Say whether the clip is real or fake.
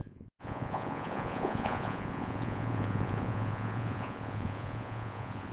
fake